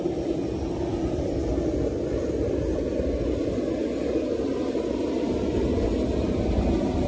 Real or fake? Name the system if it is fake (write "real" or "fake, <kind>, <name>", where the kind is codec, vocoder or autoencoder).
real